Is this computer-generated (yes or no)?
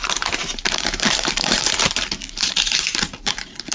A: yes